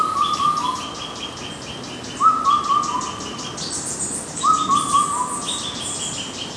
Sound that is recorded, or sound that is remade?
recorded